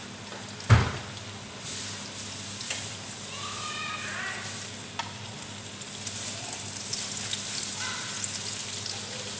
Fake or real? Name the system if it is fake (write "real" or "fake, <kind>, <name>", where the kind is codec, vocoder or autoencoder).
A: real